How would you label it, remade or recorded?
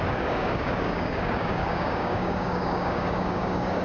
remade